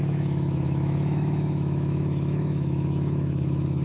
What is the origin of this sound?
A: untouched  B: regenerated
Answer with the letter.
B